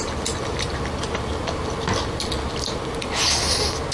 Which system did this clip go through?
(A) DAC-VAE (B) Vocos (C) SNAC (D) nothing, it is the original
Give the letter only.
D